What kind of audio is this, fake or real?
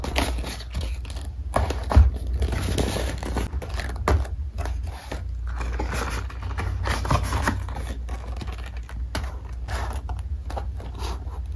real